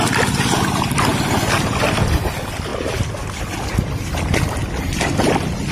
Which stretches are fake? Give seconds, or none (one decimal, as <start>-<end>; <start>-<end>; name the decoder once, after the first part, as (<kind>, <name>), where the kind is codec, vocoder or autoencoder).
1.1-1.8 (vocoder, BigVGAN v2); 2.7-3.4